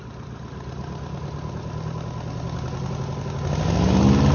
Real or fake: real